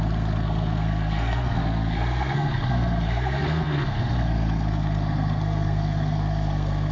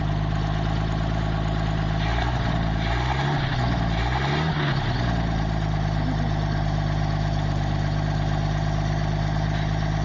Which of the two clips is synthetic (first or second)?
first